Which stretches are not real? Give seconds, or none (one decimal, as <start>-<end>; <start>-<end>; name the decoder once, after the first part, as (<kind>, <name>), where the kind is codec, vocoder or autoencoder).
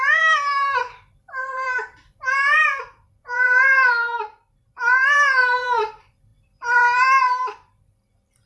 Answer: 0.0-8.5 (vocoder, BigVGAN v2)